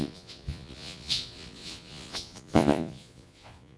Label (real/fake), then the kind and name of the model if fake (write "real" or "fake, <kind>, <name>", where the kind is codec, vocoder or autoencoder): fake, vocoder, Vocos